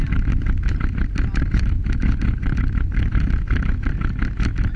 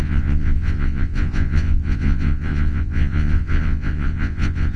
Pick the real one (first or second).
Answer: first